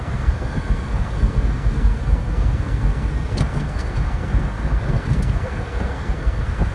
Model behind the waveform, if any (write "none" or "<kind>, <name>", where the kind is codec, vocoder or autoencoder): codec, SNAC